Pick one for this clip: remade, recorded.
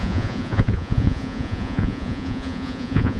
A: remade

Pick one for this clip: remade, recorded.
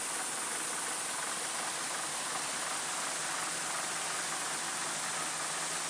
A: recorded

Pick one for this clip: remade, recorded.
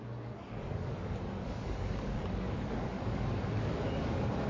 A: remade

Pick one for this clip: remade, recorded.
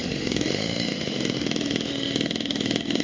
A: remade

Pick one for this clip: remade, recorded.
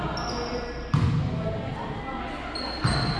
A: recorded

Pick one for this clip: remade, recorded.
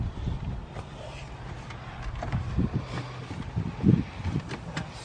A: recorded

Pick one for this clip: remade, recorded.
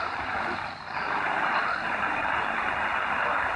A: recorded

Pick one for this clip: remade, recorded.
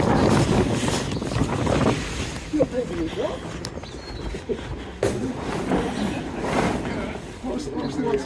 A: recorded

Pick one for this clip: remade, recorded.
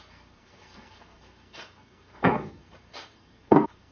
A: remade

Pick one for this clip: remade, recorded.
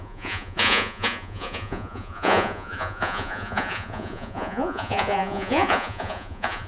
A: remade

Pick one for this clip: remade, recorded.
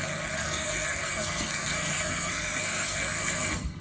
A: remade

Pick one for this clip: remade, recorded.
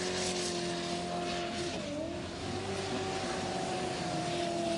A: recorded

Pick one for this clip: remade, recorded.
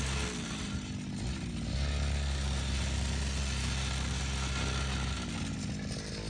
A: recorded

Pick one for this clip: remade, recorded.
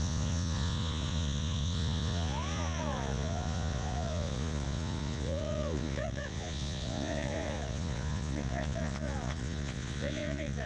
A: remade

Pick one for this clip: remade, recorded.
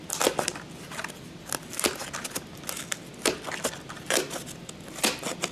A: recorded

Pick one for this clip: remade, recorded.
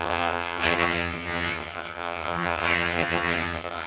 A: remade